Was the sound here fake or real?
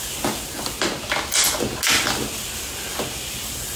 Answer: real